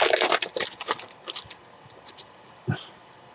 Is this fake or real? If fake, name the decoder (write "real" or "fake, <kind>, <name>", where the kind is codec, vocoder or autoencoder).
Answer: real